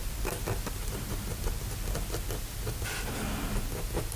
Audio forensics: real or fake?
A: real